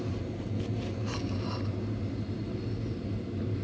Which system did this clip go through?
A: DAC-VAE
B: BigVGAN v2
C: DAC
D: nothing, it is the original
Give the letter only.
D